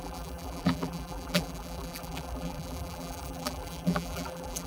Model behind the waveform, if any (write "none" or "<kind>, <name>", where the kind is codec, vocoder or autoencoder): vocoder, BigVGAN v2